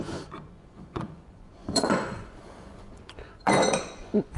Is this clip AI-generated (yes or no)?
yes